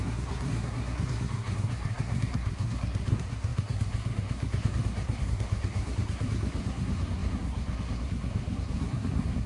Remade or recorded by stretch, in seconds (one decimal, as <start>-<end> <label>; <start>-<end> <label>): 0.0-9.5 remade